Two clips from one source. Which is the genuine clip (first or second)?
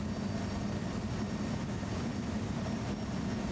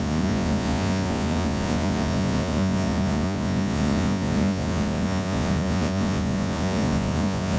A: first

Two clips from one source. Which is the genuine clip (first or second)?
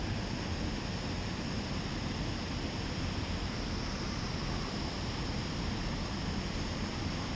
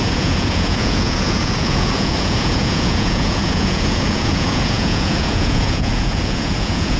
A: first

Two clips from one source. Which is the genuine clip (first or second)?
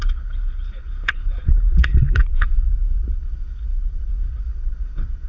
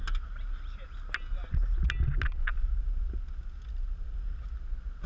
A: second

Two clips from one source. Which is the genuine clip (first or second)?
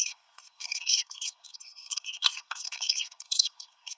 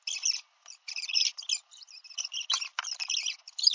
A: second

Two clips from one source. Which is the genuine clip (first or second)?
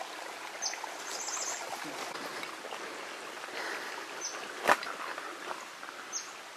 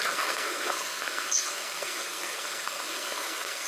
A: first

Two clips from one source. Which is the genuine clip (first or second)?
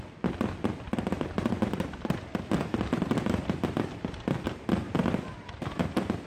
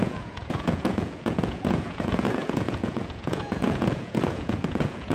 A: first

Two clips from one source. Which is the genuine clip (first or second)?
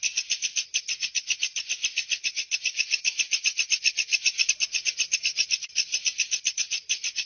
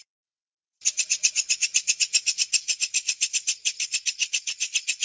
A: first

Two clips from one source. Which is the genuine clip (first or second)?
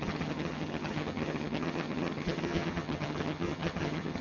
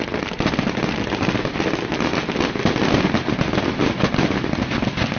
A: second